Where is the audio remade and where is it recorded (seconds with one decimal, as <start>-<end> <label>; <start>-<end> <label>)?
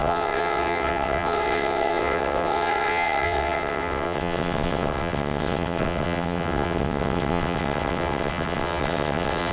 0.0-9.5 remade